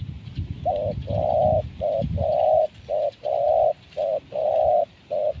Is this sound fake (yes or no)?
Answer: no